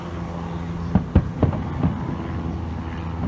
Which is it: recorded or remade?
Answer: recorded